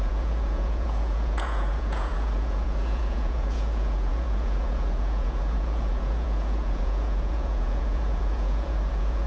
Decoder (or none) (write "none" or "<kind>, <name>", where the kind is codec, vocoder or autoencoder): vocoder, Vocos